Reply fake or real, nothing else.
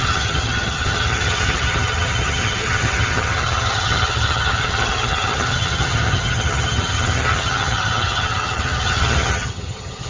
fake